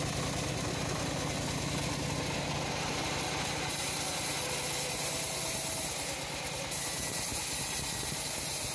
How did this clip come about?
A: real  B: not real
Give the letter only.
A